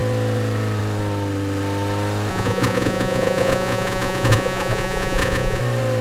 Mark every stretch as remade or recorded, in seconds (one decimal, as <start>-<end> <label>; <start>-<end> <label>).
0.0-2.3 recorded; 2.3-5.6 remade; 5.6-6.0 recorded